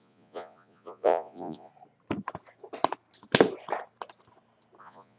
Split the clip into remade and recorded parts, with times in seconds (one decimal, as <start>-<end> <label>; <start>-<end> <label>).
0.0-1.7 remade; 1.7-4.8 recorded; 4.8-5.2 remade